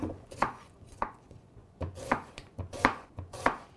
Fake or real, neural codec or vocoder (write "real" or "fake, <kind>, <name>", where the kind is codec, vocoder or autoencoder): fake, vocoder, Vocos